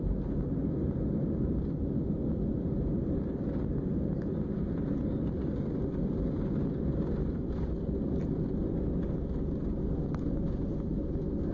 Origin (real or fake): real